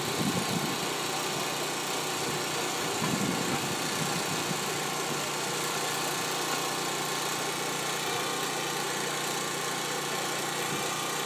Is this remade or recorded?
recorded